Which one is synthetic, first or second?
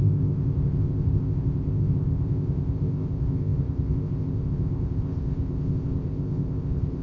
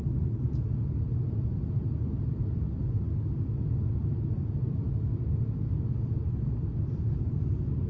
first